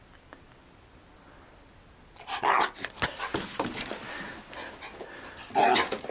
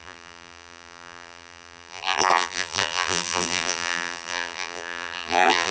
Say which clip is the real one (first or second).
first